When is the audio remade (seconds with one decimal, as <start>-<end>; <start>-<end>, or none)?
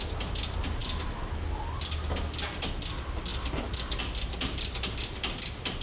none